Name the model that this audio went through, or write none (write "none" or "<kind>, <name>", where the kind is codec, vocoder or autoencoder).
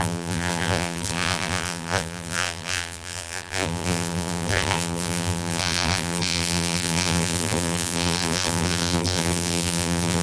vocoder, BigVGAN v2